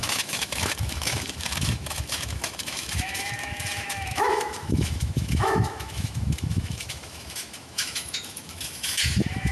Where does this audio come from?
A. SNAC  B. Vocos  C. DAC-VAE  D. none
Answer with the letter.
C